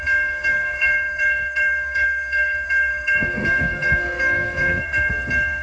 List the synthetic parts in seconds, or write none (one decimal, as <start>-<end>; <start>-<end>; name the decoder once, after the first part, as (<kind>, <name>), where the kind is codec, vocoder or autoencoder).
0.0-5.6 (codec, SNAC)